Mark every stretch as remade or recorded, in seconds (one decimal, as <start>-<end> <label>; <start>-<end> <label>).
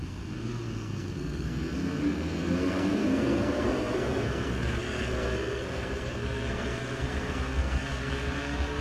0.0-8.8 remade